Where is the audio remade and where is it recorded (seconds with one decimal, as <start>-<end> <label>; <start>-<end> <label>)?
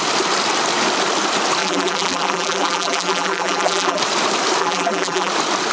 0.0-1.6 recorded; 1.6-4.0 remade; 4.0-4.6 recorded; 4.6-5.3 remade; 5.3-5.7 recorded